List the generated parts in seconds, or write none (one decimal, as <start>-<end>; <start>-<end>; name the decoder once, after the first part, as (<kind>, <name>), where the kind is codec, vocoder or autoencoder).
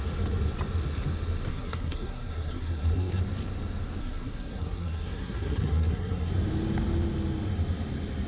1.5-3.2 (codec, SNAC); 4.0-6.3